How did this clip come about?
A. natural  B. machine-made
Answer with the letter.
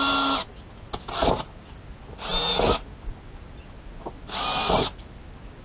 A